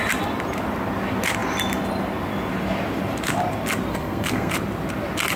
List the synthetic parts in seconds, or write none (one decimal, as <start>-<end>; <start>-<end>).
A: 3.9-4.5